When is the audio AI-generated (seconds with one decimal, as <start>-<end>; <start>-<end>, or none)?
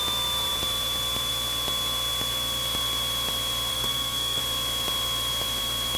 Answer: 3.7-4.4